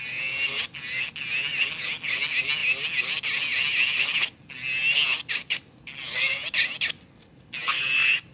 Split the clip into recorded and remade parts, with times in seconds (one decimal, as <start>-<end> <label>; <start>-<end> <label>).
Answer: 0.0-8.3 recorded

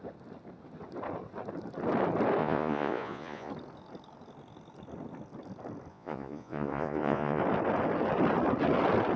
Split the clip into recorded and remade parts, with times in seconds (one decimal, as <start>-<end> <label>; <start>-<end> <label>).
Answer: 0.0-2.4 recorded; 2.4-3.5 remade; 3.5-5.9 recorded; 5.9-7.4 remade; 7.4-9.2 recorded

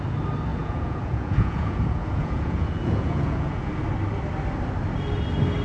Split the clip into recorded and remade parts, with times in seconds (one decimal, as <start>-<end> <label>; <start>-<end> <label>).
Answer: 0.0-0.5 recorded; 0.5-3.7 remade; 3.7-5.6 recorded

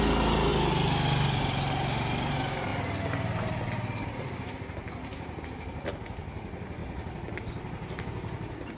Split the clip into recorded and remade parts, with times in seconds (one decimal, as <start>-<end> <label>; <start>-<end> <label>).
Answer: 0.0-8.8 recorded

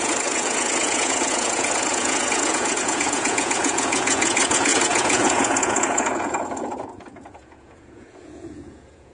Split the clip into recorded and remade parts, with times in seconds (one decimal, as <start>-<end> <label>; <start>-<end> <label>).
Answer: 0.0-9.1 remade

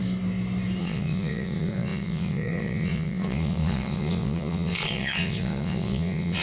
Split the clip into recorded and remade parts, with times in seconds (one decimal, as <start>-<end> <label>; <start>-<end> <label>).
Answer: 0.0-0.8 recorded; 0.8-6.4 remade

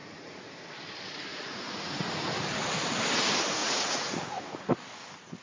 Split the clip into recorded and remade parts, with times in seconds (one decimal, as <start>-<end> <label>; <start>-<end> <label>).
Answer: 0.0-0.6 remade; 0.6-1.3 recorded; 1.3-1.9 remade; 1.9-3.6 recorded; 3.6-4.7 remade; 4.7-5.4 recorded

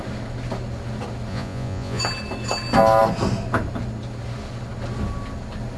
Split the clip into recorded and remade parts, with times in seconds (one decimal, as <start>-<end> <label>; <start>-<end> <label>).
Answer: 0.0-1.3 recorded; 1.3-2.0 remade; 2.0-5.8 recorded